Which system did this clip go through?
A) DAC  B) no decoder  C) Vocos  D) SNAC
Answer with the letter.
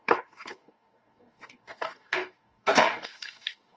A